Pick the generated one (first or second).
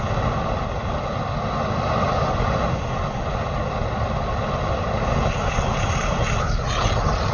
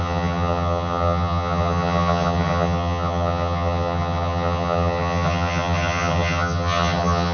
second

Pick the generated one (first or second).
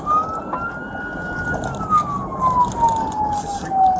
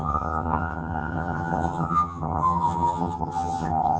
second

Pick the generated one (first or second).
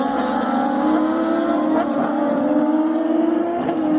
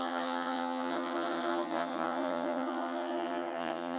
second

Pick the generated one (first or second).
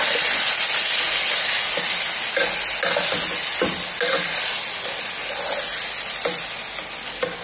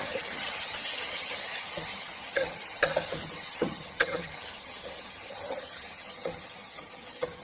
second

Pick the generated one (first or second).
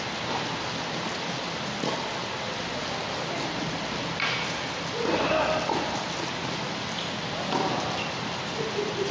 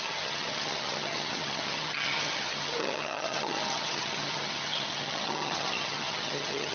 second